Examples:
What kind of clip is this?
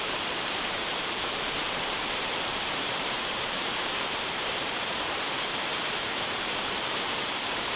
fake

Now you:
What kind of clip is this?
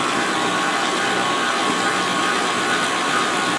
real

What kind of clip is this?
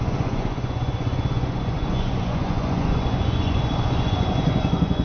fake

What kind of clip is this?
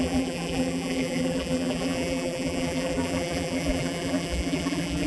fake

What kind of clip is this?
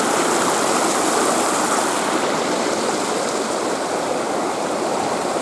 fake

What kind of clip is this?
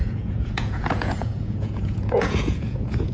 fake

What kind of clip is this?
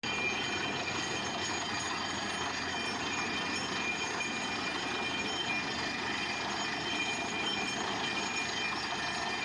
real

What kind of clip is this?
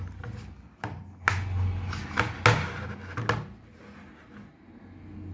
real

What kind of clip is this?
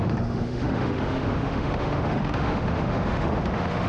fake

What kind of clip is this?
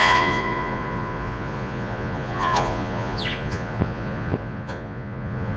fake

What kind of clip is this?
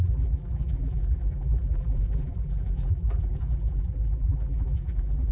fake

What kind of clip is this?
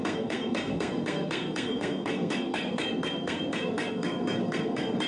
fake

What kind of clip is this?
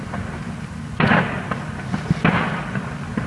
real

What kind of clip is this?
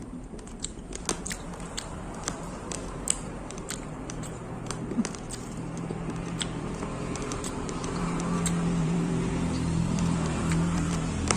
fake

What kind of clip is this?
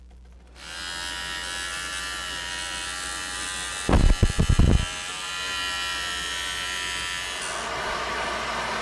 real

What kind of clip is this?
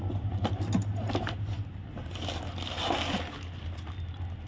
real